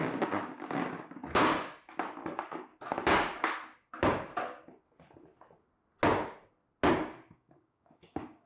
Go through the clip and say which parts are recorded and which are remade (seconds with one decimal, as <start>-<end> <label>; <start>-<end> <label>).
0.0-1.5 remade; 1.5-2.3 recorded; 2.3-2.7 remade; 2.7-7.3 recorded; 7.3-8.5 remade